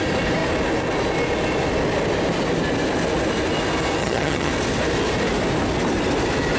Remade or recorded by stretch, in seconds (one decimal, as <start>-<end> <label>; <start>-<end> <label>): 0.0-4.0 recorded; 4.0-4.5 remade; 4.5-6.6 recorded